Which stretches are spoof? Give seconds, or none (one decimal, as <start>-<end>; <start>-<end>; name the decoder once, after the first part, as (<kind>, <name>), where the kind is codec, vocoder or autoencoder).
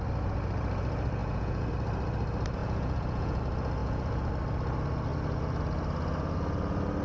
1.2-1.7 (vocoder, Vocos); 2.6-3.4; 3.8-4.3